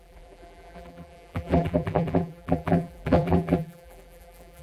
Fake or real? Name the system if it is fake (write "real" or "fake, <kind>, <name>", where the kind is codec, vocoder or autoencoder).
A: fake, vocoder, BigVGAN v2